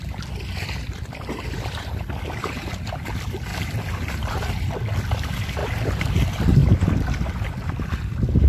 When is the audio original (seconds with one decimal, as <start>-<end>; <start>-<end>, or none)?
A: 0.0-3.5; 4.5-5.6; 6.1-8.5